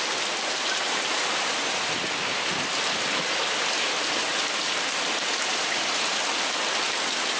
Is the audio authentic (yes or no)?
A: yes